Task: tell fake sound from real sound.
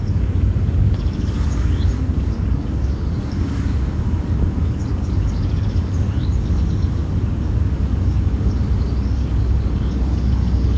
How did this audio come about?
fake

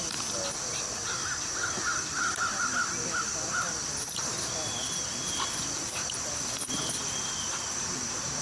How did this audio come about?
real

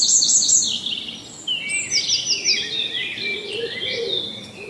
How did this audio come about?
real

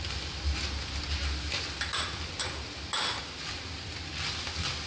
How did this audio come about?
real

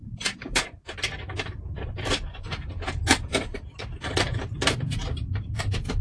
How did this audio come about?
fake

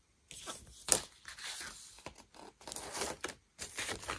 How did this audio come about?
real